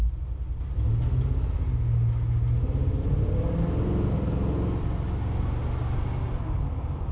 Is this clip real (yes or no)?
yes